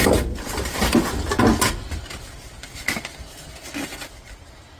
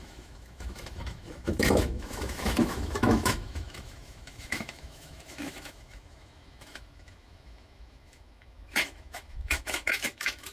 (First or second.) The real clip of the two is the first